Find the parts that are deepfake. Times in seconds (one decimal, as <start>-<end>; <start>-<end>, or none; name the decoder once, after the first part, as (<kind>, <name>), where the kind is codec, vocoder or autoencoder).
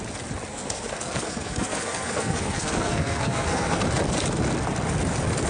0.5-3.8 (codec, SNAC)